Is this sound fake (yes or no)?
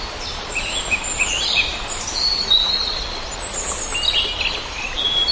no